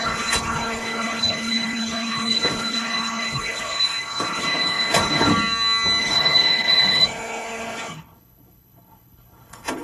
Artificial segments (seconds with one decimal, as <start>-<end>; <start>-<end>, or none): 0.0-5.3; 6.0-9.8